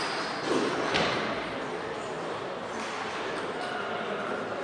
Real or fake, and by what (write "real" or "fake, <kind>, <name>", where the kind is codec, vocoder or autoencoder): real